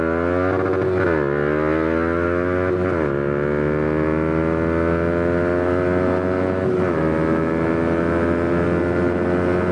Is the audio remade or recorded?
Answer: recorded